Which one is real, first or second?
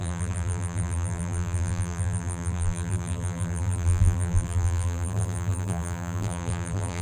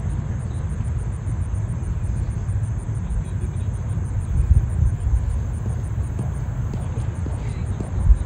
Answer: second